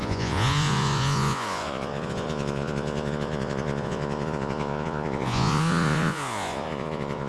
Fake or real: fake